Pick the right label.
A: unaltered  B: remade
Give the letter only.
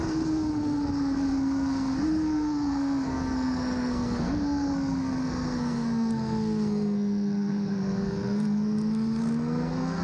B